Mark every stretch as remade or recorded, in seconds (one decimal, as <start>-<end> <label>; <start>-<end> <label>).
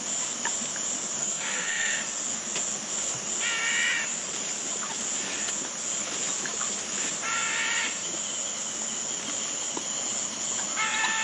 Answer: 0.0-1.2 recorded; 1.2-2.0 remade; 2.0-11.2 recorded